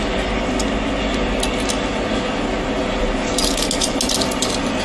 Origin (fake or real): real